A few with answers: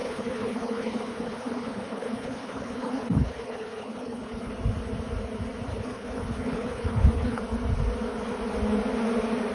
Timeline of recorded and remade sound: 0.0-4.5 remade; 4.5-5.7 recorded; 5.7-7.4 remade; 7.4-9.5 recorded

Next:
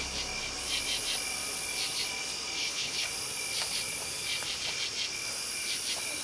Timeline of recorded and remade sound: 0.0-2.6 recorded; 2.6-3.1 remade; 3.1-6.2 recorded

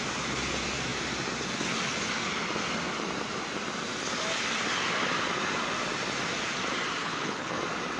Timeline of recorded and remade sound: 0.0-7.0 recorded; 7.0-7.5 remade; 7.5-8.0 recorded

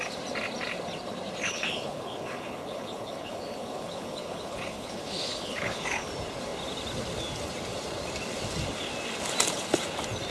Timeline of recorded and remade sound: 0.0-1.4 recorded; 1.4-6.1 remade; 6.1-10.3 recorded